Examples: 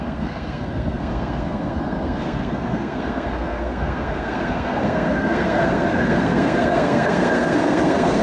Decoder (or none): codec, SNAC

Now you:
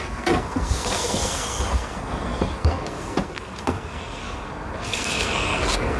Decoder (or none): codec, SNAC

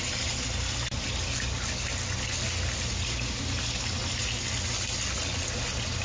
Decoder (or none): none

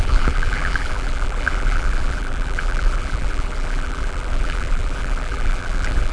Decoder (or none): vocoder, BigVGAN v2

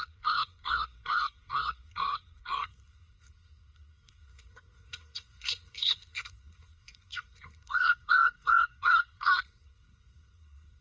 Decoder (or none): codec, SNAC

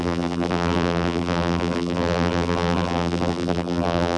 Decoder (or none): vocoder, BigVGAN v2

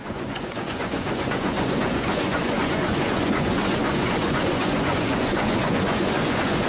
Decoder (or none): vocoder, Vocos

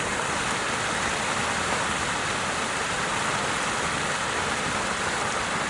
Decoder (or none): none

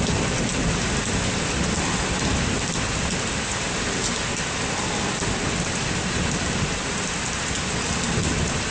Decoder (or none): none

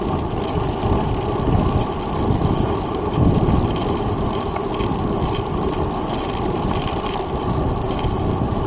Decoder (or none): none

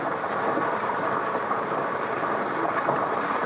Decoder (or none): none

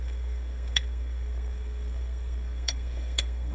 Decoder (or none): codec, SNAC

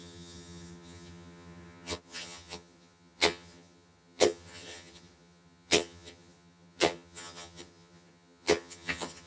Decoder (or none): vocoder, HiFi-GAN